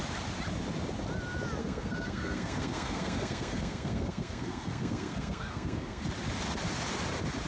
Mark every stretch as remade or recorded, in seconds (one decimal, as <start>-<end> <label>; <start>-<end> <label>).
0.0-1.6 recorded; 1.6-6.0 remade; 6.0-7.5 recorded